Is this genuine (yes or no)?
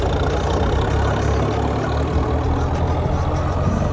yes